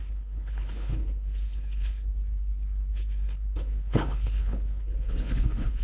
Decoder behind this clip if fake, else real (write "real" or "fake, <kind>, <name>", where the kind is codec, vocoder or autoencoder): fake, codec, HILCodec